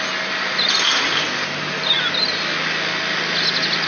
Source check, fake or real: real